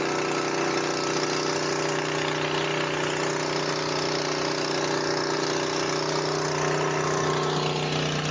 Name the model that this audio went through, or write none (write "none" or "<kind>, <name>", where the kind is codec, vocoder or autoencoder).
none